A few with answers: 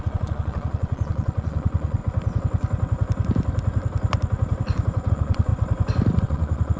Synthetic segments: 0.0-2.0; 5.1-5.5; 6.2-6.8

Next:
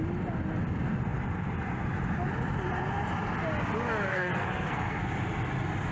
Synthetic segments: 4.1-5.0

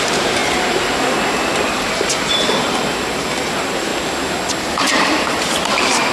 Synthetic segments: 0.0-0.4; 1.7-3.9; 4.6-6.1

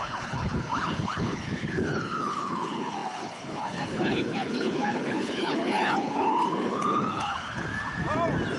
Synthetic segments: 0.0-7.7

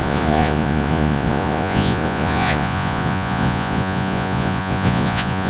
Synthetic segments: 0.0-5.5

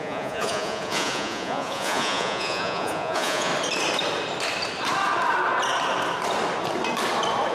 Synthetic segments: 0.0-3.5

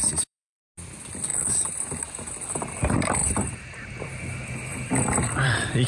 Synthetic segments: 0.0-0.6; 3.2-4.1; 4.7-5.9

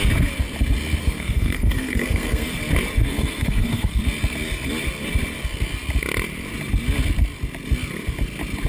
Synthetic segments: 1.0-2.6; 3.1-4.0